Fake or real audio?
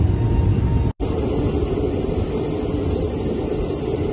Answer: real